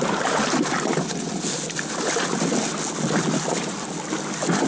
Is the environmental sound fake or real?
real